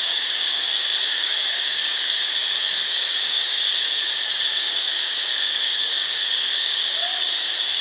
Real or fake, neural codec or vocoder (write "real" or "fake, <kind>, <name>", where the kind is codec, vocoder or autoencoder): fake, codec, DAC